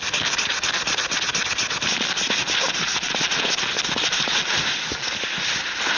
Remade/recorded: recorded